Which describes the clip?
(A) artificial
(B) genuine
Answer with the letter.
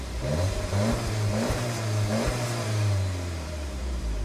A